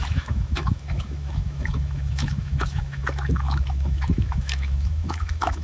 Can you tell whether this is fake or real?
fake